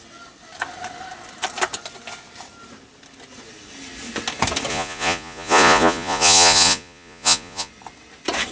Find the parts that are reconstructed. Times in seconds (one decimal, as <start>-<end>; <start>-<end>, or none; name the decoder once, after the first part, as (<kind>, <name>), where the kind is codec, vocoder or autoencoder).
4.7-7.7 (vocoder, Vocos)